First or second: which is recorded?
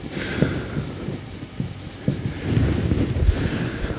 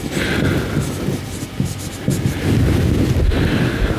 second